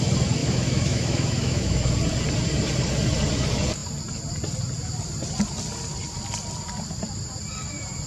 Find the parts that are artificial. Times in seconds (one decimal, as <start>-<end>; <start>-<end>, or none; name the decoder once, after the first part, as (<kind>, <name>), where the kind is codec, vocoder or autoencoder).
0.4-1.9 (autoencoder, DAC-VAE)